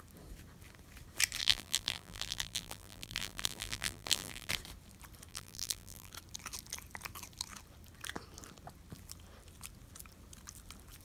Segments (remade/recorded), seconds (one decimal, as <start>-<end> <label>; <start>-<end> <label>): 0.0-1.4 recorded; 1.4-4.5 remade; 4.5-5.3 recorded; 5.3-6.1 remade; 6.1-11.0 recorded